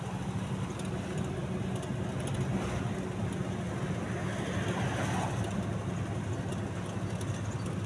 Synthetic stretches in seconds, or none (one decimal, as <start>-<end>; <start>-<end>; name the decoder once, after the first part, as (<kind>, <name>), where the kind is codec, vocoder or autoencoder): none